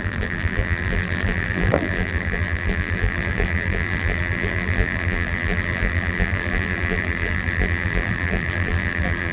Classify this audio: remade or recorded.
remade